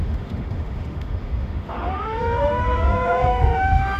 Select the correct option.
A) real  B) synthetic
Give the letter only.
B